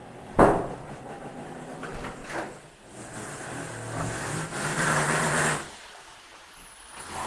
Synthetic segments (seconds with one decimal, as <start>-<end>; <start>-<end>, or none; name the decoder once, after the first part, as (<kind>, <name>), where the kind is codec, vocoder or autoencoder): 0.0-3.2 (vocoder, BigVGAN v2); 4.7-5.4